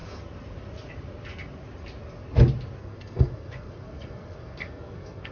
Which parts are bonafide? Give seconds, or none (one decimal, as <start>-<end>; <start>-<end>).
0.0-2.8